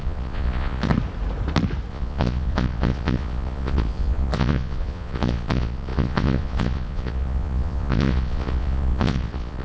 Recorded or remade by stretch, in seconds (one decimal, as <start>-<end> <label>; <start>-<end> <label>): 0.0-0.9 remade; 0.9-1.9 recorded; 1.9-9.6 remade